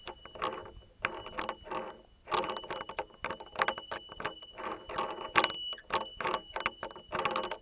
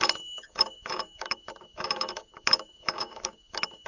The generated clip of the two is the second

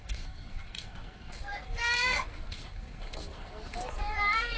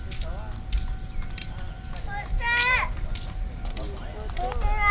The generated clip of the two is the first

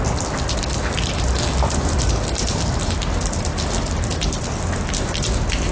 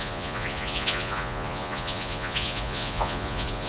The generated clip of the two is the second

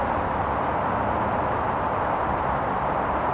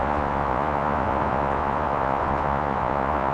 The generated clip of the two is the second